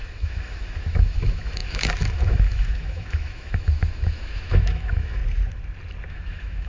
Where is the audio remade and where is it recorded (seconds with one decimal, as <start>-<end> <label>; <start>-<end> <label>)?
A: 0.0-5.2 remade; 5.2-6.1 recorded; 6.1-6.7 remade